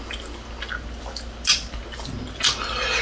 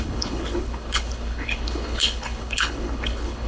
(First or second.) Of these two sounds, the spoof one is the second